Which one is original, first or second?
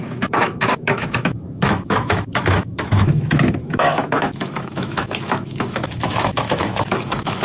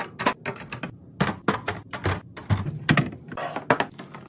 second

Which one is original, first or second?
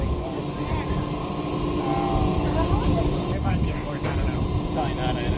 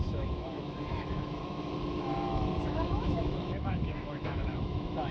first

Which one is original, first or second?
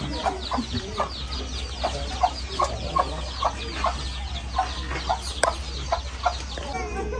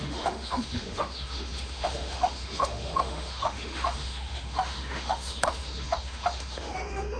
first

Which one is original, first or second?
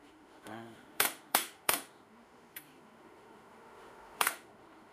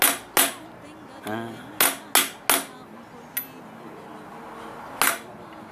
second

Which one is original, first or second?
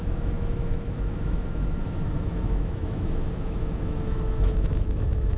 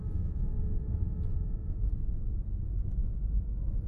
second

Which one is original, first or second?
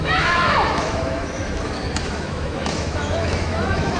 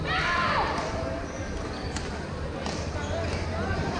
second